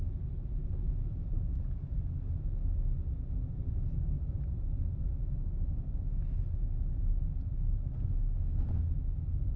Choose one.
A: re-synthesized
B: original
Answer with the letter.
B